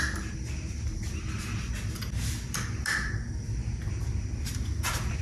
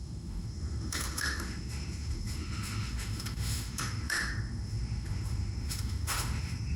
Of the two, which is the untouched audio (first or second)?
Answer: first